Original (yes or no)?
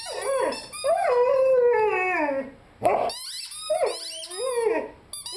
yes